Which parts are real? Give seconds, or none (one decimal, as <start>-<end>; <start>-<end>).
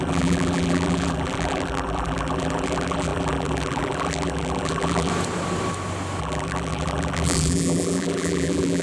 5.1-6.2